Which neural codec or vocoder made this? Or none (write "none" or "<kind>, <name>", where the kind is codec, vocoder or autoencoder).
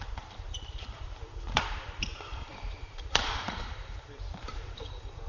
vocoder, BigVGAN v2